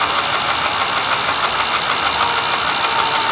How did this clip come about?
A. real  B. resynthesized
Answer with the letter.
A